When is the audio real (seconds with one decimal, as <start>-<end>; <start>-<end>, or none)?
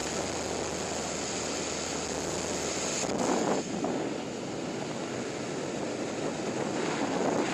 0.0-7.5